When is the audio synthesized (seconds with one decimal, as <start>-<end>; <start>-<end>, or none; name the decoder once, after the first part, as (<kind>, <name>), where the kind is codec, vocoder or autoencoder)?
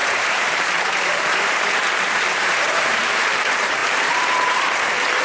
0.0-5.2 (vocoder, BigVGAN v2)